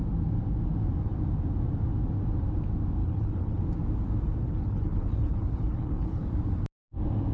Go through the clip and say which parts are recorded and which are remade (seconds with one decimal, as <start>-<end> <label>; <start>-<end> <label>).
0.0-3.0 recorded; 3.0-3.6 remade; 3.6-4.4 recorded; 4.4-6.3 remade; 6.3-7.3 recorded

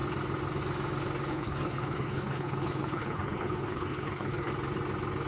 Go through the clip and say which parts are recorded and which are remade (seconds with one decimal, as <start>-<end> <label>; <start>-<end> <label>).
0.0-1.3 recorded; 1.3-4.5 remade; 4.5-5.3 recorded

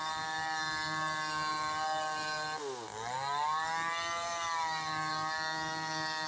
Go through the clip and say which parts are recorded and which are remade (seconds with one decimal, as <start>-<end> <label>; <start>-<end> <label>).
0.0-6.3 recorded

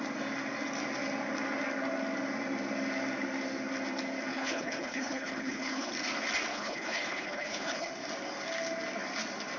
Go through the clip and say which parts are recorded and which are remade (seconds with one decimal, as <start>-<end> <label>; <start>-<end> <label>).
0.0-4.3 recorded; 4.3-5.9 remade; 5.9-6.5 recorded; 6.5-7.9 remade; 7.9-9.6 recorded

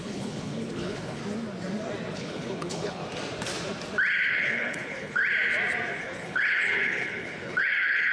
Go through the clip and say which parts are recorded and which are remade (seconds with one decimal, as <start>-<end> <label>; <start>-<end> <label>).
0.0-1.2 remade; 1.2-2.1 recorded; 2.1-3.0 remade; 3.0-4.3 recorded; 4.3-5.2 remade; 5.2-6.0 recorded; 6.0-8.1 remade

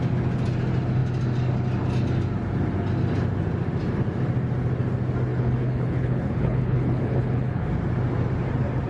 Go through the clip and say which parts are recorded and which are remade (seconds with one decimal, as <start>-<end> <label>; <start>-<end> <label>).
0.0-5.3 recorded; 5.3-7.7 remade; 7.7-8.9 recorded

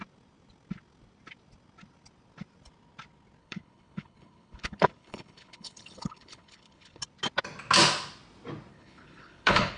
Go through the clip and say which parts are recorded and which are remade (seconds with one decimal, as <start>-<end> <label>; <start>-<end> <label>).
0.0-3.4 recorded; 3.4-7.0 remade; 7.0-8.7 recorded; 8.7-9.8 remade